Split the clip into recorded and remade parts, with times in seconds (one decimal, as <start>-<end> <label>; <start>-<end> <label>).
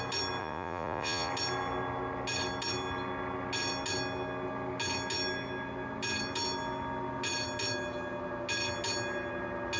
0.0-0.4 recorded; 0.4-1.3 remade; 1.3-9.8 recorded